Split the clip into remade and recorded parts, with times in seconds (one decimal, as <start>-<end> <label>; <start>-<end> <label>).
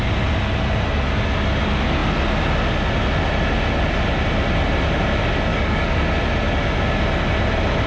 0.0-5.5 recorded; 5.5-6.0 remade; 6.0-7.9 recorded